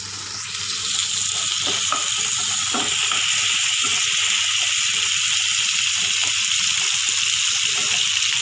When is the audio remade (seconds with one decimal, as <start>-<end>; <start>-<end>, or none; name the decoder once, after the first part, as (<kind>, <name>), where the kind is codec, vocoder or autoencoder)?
none